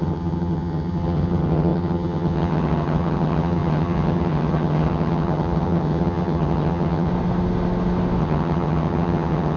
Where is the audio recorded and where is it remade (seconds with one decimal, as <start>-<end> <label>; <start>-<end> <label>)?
0.0-7.1 remade; 7.1-8.2 recorded; 8.2-9.6 remade